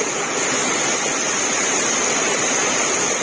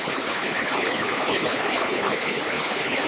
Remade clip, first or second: second